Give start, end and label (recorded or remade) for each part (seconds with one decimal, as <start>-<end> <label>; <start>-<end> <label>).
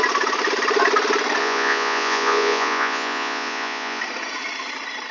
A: 0.0-1.4 recorded; 1.4-4.0 remade; 4.0-5.1 recorded